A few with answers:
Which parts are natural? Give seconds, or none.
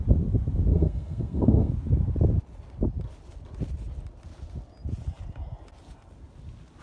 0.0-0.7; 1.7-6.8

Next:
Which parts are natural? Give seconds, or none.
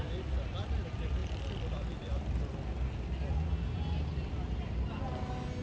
0.0-5.6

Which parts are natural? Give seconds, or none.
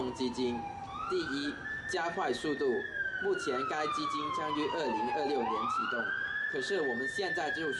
0.0-5.8; 6.5-7.8